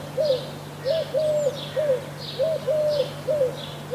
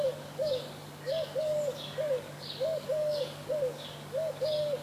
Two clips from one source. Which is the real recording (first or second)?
first